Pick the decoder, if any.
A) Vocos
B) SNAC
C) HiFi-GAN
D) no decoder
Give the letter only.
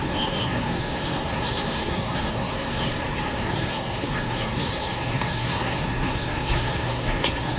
B